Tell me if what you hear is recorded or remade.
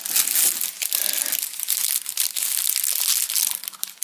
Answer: recorded